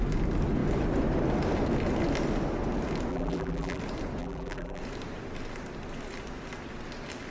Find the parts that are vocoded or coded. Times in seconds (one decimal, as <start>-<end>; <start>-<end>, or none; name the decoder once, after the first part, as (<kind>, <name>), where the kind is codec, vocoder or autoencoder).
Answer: 3.1-3.8 (vocoder, BigVGAN v2); 4.2-4.8

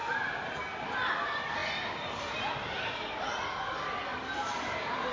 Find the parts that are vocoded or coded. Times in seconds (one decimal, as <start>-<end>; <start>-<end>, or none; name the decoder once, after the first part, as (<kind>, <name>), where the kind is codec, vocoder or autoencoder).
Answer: 0.0-0.6 (vocoder, BigVGAN v2); 1.6-3.6; 4.1-5.1

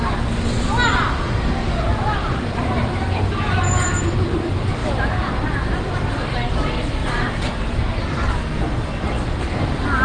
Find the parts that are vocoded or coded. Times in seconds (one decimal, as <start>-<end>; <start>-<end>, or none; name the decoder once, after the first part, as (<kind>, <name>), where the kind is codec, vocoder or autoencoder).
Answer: 2.2-3.1 (vocoder, BigVGAN v2); 7.0-8.3